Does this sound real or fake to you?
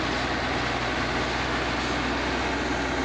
real